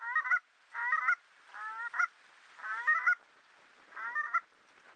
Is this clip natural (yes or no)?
yes